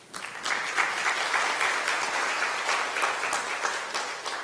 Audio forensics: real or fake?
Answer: real